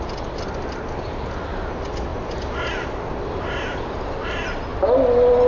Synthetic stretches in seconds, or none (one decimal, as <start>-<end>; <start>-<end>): none